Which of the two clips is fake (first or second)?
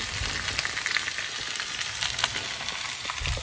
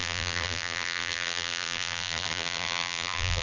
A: second